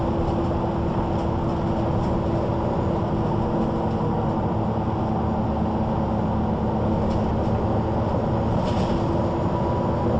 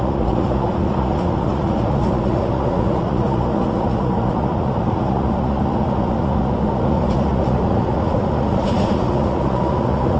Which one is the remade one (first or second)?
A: second